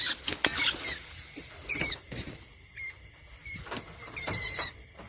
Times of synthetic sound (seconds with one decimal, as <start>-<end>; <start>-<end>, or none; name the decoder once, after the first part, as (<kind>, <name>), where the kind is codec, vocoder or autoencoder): none